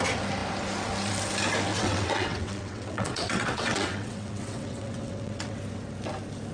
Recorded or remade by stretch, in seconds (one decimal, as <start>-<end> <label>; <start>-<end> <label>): 0.0-1.7 recorded; 1.7-5.6 remade; 5.6-6.5 recorded